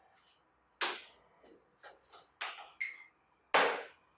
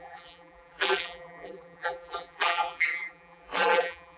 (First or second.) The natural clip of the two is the first